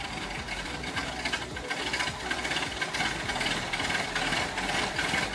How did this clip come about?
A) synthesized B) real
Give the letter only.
B